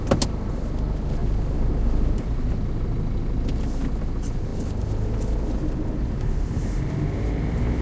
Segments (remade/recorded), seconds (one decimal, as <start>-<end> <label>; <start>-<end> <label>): 0.0-7.8 recorded

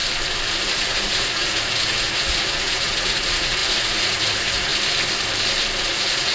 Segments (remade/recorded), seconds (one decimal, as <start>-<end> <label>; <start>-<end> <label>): 0.0-0.6 recorded; 0.6-4.7 remade; 4.7-5.8 recorded; 5.8-6.3 remade